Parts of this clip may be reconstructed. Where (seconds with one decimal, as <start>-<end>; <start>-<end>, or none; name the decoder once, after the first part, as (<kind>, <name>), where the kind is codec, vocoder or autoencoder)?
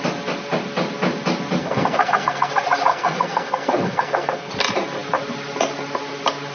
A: 1.6-2.5 (codec, SNAC); 2.9-4.5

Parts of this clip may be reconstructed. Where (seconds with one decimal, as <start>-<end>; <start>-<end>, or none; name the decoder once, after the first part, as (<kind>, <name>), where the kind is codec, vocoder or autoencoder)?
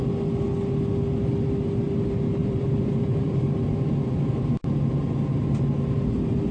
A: 2.4-4.7 (vocoder, BigVGAN v2)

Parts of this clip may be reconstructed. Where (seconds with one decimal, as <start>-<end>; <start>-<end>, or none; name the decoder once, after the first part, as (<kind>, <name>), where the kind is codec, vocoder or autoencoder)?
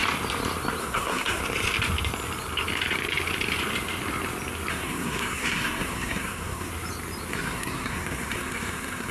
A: 0.8-1.4 (codec, SNAC); 4.7-6.7; 7.3-9.1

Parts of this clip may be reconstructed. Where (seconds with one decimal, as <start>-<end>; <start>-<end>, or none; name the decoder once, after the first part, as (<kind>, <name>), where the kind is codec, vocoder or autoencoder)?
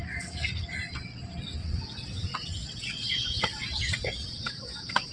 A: 1.6-5.1 (vocoder, WaveNeXt)